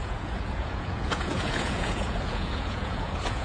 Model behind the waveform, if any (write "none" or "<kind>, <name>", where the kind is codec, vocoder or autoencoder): vocoder, Vocos